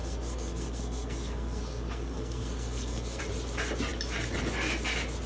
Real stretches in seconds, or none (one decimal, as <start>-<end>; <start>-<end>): 3.2-5.3